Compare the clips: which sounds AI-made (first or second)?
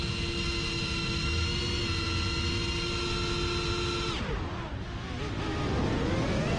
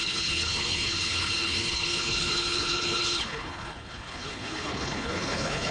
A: second